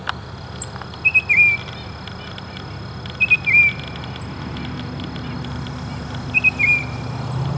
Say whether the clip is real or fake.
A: real